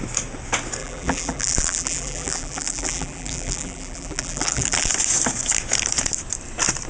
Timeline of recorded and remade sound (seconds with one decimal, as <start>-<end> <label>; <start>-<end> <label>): 0.0-0.8 recorded; 0.8-4.9 remade; 4.9-6.9 recorded

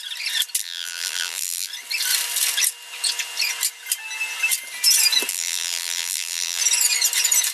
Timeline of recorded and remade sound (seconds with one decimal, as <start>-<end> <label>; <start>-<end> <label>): 0.0-0.6 recorded; 0.6-1.7 remade; 1.7-5.3 recorded; 5.3-6.6 remade; 6.6-7.5 recorded

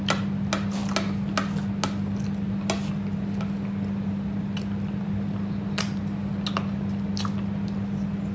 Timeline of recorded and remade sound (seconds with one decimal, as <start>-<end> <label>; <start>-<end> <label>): 0.0-8.3 recorded

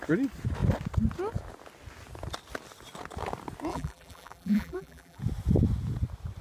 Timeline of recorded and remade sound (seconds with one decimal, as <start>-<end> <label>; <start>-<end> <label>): 0.0-3.7 recorded; 3.7-5.2 remade; 5.2-6.4 recorded

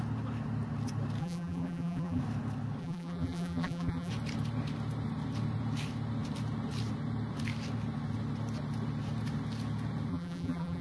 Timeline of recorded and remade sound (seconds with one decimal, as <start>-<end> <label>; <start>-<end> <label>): 0.0-1.2 recorded; 1.2-2.2 remade; 2.2-2.8 recorded; 2.8-4.1 remade; 4.1-10.1 recorded; 10.1-10.8 remade

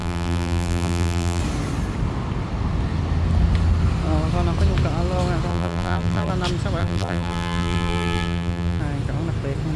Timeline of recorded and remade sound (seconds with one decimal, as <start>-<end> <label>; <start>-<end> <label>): 0.0-1.4 remade; 1.4-5.5 recorded; 5.5-6.3 remade; 6.3-6.8 recorded; 6.8-8.8 remade; 8.8-9.8 recorded

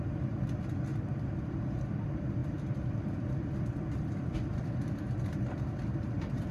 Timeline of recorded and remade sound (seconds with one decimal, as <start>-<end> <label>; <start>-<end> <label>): 0.0-2.4 recorded; 2.4-5.4 remade; 5.4-6.5 recorded

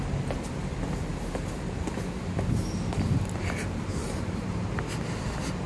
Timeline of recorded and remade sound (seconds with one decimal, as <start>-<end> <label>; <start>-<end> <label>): 0.0-4.0 recorded; 4.0-4.7 remade; 4.7-5.7 recorded